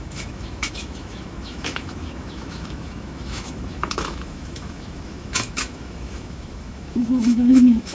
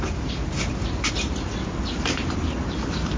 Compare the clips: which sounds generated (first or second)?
first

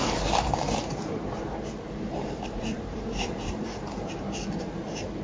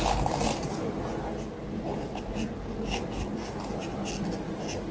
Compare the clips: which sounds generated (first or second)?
first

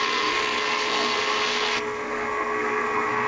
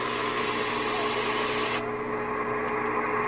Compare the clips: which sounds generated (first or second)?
first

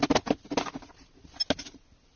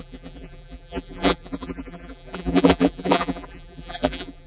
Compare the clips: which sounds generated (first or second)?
second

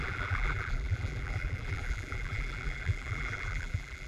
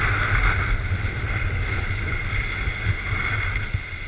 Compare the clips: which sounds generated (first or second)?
first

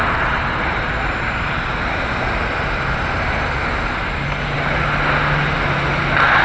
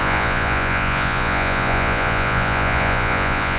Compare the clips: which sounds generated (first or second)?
second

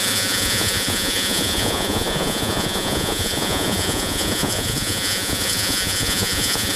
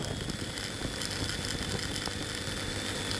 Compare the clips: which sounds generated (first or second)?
first